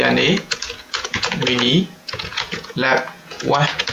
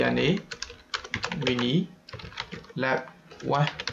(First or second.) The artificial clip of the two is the first